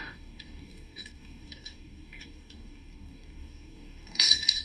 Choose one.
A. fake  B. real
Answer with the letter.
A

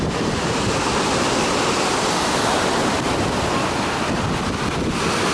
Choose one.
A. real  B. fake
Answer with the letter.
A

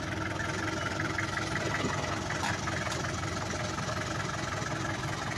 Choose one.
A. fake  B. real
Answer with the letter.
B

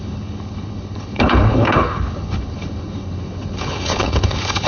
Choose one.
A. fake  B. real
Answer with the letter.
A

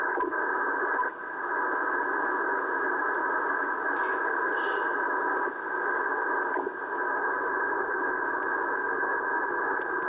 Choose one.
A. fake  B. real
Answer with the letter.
B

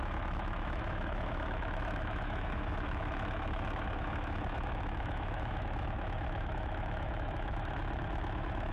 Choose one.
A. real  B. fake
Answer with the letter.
B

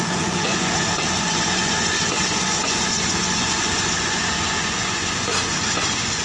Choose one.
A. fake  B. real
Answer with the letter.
A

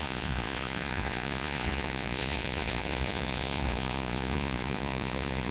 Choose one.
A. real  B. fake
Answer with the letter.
B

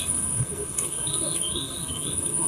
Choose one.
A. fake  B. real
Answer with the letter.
A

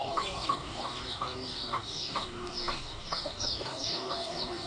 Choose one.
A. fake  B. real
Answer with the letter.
A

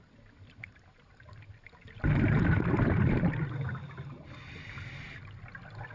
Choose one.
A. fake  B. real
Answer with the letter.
B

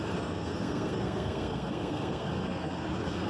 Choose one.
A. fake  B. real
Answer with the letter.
A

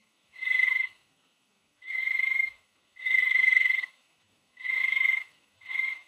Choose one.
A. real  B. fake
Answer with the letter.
B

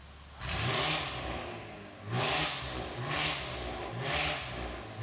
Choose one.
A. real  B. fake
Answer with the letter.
A